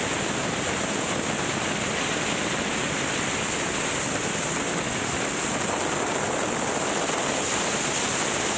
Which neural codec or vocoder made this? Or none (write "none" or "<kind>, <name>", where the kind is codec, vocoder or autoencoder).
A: none